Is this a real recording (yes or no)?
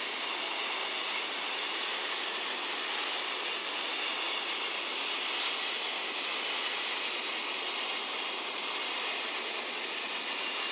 yes